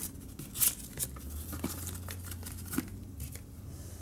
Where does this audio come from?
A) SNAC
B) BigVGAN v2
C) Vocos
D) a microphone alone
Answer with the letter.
D